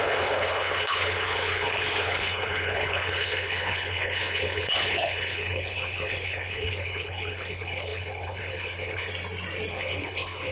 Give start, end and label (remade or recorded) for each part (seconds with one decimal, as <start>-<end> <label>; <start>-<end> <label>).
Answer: 0.0-9.1 remade; 9.1-9.7 recorded; 9.7-10.5 remade